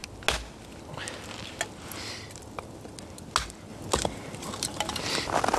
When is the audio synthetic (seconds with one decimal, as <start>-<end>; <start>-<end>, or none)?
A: none